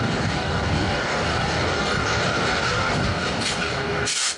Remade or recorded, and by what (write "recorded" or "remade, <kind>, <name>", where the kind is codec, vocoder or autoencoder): remade, codec, DAC